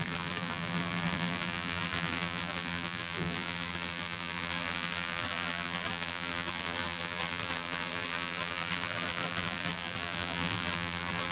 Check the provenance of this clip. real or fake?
fake